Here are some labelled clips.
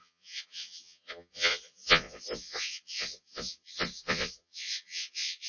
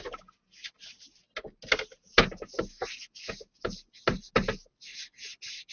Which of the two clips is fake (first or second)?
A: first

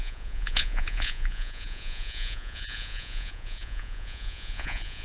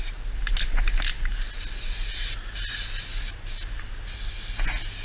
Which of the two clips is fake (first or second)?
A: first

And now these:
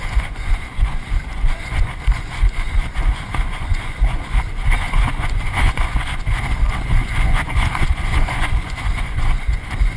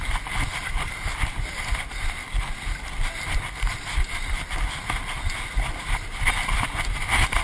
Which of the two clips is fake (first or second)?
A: first